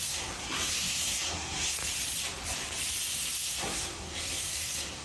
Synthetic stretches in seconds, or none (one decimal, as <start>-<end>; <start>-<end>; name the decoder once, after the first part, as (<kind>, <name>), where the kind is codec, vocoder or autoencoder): 0.0-1.8 (codec, SNAC); 3.1-5.0